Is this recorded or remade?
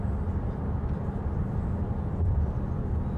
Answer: recorded